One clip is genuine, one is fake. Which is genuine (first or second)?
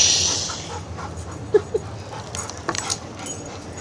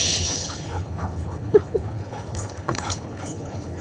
first